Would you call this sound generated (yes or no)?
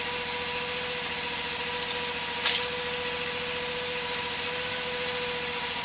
no